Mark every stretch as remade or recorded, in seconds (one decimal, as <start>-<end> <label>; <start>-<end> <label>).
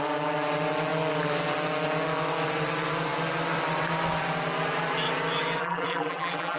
0.0-5.6 recorded; 5.6-6.6 remade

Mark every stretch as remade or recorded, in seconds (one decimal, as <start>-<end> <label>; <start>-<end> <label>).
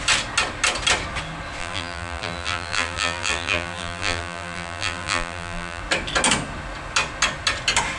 0.0-1.6 recorded; 1.6-5.8 remade; 5.8-8.0 recorded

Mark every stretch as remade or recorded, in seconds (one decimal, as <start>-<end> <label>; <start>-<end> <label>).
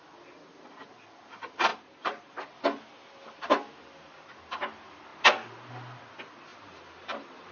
0.0-1.7 recorded; 1.7-2.3 remade; 2.3-6.5 recorded; 6.5-7.5 remade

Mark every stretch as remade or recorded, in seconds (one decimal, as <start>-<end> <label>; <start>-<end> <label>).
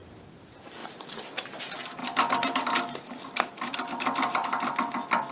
0.0-5.3 recorded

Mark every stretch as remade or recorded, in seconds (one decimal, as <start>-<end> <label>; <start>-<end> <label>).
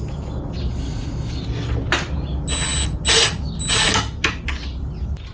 0.0-5.3 recorded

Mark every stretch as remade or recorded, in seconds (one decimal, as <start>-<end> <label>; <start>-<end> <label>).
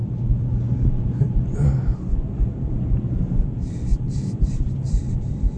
0.0-3.9 recorded; 3.9-5.0 remade; 5.0-5.6 recorded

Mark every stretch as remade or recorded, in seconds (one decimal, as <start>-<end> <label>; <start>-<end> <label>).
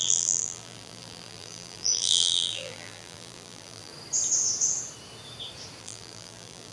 0.0-3.9 remade; 3.9-5.8 recorded; 5.8-6.7 remade